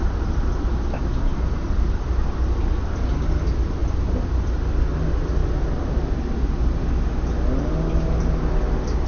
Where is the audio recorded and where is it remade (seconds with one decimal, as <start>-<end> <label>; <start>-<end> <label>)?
0.0-9.1 recorded